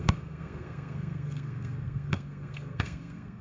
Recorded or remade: remade